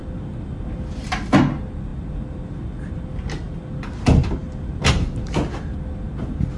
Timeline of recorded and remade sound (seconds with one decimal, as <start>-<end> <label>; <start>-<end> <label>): 0.0-6.6 recorded